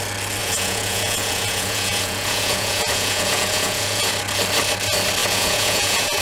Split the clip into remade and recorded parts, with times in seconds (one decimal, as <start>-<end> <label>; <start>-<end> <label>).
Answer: 0.0-0.4 recorded; 0.4-4.1 remade; 4.1-5.2 recorded; 5.2-6.2 remade